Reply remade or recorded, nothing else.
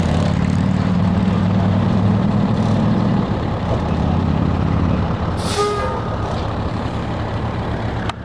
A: remade